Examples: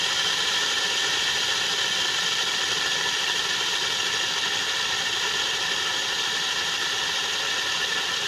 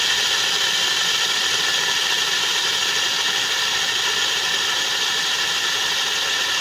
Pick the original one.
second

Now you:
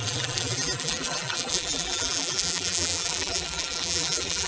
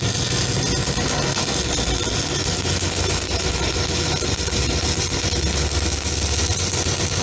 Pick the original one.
second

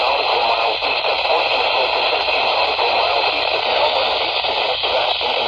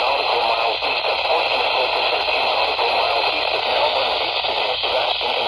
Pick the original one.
second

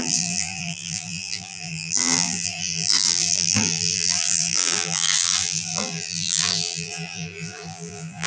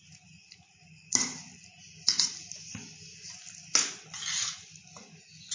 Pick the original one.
second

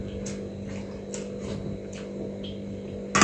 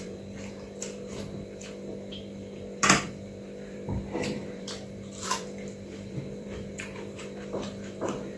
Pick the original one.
first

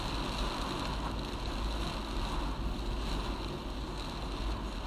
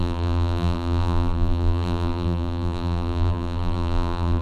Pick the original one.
first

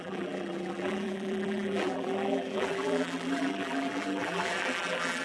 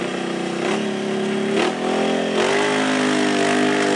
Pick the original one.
second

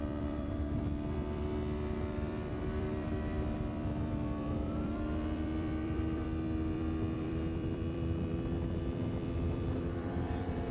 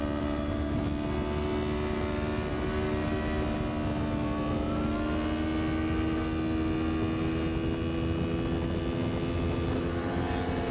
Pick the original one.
second